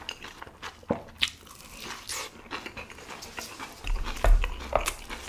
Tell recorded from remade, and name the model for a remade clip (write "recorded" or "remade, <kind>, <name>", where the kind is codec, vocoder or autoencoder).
recorded